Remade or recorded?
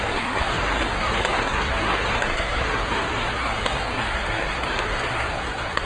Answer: remade